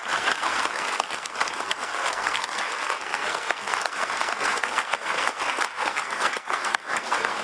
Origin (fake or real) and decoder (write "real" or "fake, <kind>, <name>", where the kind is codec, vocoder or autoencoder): fake, codec, SNAC